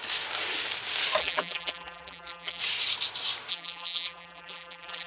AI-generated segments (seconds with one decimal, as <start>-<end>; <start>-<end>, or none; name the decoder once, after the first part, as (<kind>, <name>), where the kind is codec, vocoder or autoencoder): 1.2-2.6 (vocoder, BigVGAN v2); 3.5-5.1